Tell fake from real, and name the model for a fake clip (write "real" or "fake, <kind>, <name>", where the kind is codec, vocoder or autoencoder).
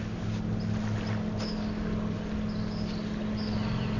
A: real